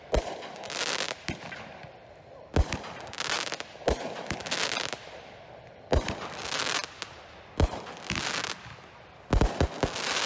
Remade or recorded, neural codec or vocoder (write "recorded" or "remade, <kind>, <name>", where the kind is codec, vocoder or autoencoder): recorded